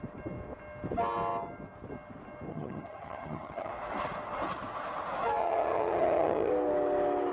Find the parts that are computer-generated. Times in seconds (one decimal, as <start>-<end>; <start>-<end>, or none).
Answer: 2.5-3.7; 5.4-6.5